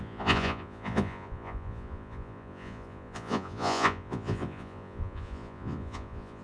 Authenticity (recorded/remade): remade